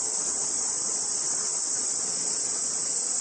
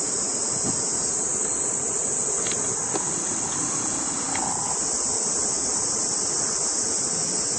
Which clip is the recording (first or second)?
second